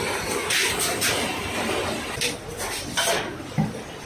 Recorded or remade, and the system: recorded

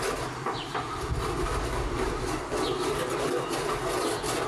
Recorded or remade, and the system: recorded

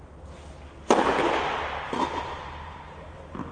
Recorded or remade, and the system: recorded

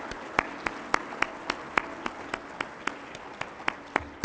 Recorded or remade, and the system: recorded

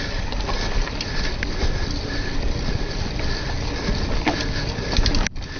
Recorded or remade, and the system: recorded